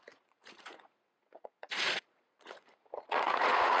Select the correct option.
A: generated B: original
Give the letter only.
A